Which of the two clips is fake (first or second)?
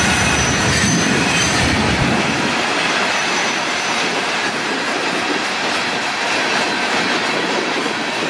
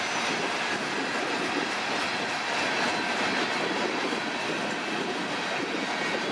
first